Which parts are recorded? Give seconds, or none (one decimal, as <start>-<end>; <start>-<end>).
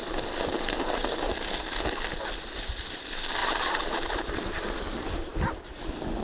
0.0-6.2